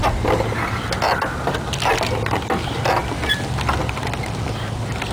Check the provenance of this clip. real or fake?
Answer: real